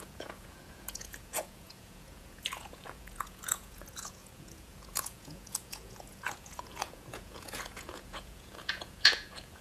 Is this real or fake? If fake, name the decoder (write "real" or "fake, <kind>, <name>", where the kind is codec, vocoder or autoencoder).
fake, vocoder, Vocos